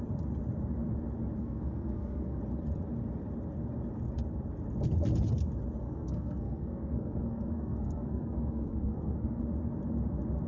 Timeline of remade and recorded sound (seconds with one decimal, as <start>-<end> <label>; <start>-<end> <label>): 0.0-1.4 recorded; 1.4-2.4 remade; 2.4-5.8 recorded; 5.8-9.4 remade; 9.4-10.5 recorded